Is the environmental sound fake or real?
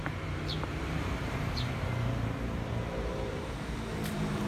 fake